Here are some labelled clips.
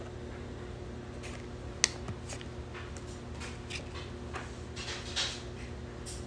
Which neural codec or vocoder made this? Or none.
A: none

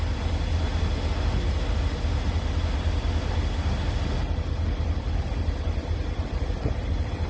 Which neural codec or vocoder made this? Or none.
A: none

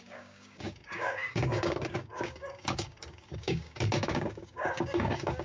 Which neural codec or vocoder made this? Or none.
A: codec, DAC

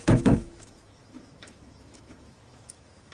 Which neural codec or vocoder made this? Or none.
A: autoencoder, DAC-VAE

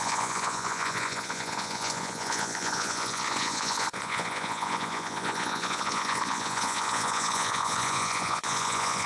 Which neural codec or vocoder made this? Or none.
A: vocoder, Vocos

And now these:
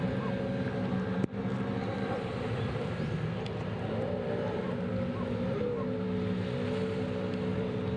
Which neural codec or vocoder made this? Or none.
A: none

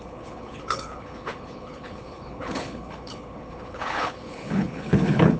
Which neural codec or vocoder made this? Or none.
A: codec, HILCodec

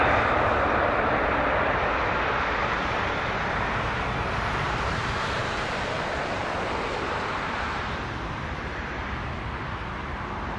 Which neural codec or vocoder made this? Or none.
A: none